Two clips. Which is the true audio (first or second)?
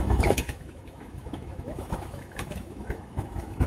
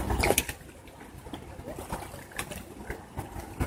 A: second